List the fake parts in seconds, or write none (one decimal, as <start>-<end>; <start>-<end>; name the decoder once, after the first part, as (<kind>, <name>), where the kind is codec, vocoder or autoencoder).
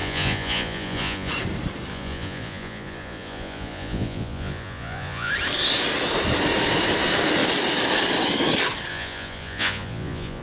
0.0-1.3 (vocoder, Vocos); 1.9-5.3; 8.9-10.4